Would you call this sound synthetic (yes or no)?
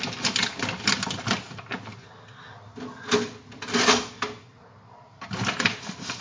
no